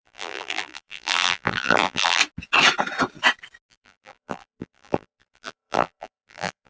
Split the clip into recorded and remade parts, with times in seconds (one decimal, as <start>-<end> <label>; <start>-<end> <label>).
0.0-2.2 remade; 2.2-3.7 recorded; 3.7-6.7 remade